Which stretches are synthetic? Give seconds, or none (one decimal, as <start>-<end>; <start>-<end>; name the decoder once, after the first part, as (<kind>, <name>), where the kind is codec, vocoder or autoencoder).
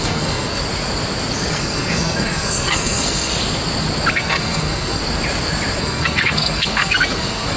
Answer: 0.0-0.6 (codec, SNAC); 1.5-3.3; 4.1-5.0; 5.8-7.6